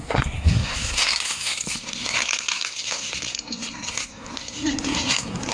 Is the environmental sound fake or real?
fake